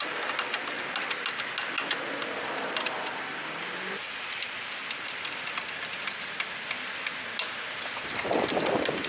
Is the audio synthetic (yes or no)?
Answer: no